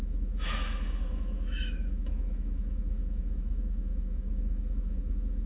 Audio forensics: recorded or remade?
remade